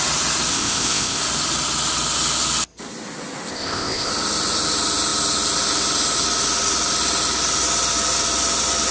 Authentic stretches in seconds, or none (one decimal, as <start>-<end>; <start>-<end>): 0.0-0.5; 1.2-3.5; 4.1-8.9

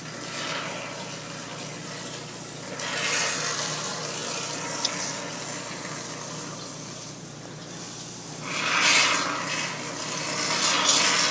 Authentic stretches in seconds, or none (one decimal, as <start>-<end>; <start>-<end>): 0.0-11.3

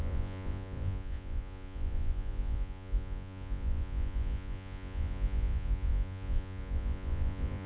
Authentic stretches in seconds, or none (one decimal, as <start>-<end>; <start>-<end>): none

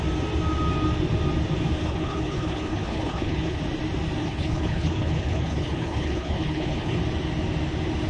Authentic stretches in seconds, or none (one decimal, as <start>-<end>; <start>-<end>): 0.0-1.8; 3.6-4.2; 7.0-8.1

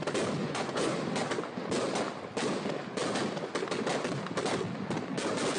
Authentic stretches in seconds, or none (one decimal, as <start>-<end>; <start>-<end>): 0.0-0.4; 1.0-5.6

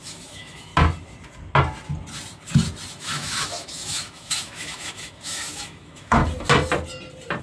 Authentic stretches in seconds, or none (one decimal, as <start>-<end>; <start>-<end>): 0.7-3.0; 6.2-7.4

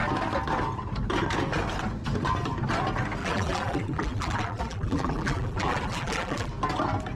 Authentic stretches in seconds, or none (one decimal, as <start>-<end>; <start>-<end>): 0.0-3.2; 6.5-7.2

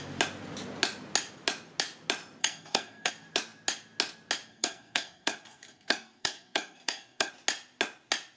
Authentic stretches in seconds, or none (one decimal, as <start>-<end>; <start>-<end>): 0.0-2.4; 3.1-4.5; 7.3-8.4